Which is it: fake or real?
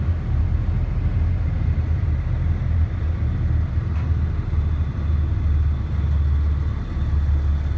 real